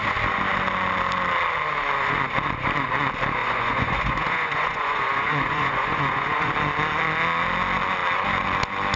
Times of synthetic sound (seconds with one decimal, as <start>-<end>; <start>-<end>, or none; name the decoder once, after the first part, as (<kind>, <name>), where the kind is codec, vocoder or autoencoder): 3.4-6.5 (vocoder, Vocos)